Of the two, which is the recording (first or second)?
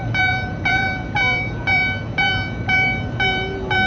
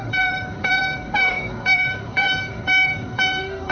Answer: first